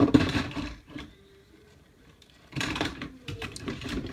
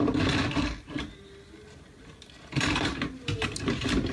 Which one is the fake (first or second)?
first